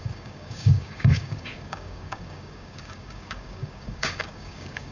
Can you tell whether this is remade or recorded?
remade